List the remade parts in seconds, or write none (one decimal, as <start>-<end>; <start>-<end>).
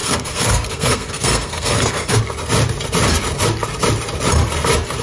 0.0-2.2